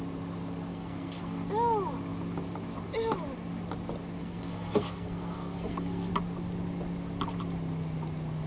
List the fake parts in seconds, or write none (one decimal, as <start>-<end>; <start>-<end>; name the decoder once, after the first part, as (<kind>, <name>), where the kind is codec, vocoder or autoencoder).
0.7-1.5 (codec, SNAC); 4.2-6.1